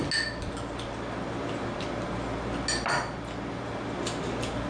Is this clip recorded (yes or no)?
yes